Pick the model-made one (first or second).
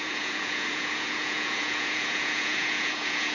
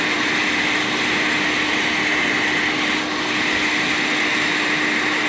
first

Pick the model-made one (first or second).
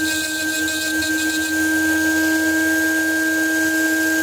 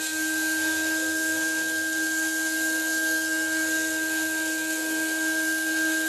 second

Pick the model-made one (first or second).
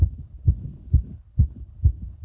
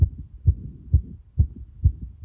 first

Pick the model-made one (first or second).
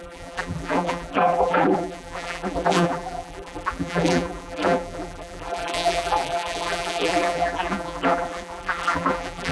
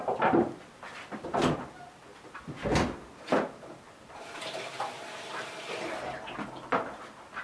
first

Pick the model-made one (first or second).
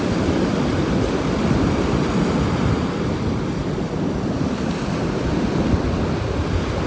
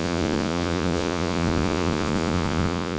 second